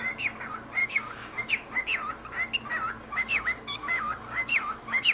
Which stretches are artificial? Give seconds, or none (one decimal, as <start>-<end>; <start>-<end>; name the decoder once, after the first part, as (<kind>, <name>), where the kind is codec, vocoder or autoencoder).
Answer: 0.8-1.5 (codec, DAC); 3.0-5.1